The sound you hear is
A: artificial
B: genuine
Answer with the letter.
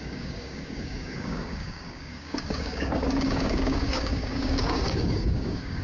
A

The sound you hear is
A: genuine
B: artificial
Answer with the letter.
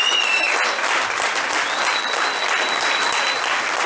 A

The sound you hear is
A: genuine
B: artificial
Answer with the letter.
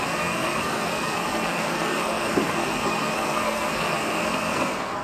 B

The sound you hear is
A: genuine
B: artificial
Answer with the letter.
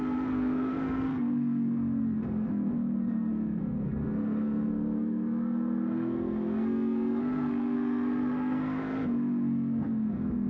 B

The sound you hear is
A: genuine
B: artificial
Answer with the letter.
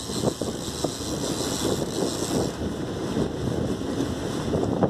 A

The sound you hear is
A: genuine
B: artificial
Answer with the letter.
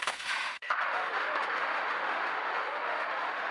B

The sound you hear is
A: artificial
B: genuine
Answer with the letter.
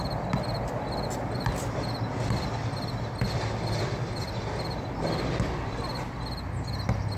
B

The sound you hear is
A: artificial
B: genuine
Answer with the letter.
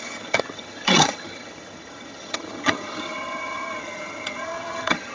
A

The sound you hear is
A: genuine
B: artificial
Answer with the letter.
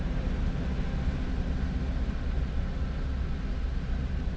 A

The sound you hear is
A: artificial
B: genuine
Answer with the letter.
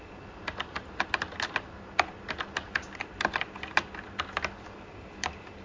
B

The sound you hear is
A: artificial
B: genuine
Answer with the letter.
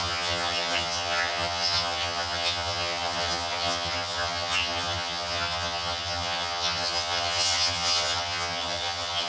A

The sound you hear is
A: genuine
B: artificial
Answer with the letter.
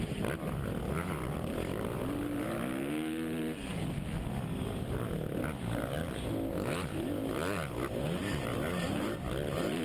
A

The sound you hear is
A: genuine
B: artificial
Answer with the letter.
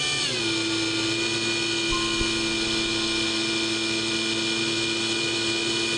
A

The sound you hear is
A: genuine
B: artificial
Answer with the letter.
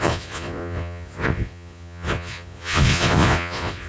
B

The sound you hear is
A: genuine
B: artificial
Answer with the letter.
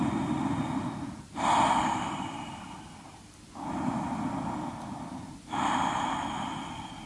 A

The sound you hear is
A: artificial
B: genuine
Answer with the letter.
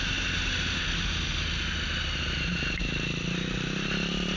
B